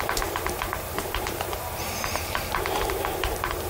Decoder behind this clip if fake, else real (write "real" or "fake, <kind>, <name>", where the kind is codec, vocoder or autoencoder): fake, vocoder, BigVGAN v2